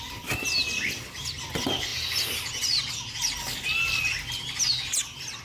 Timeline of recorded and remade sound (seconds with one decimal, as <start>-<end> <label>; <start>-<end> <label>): 0.0-5.4 recorded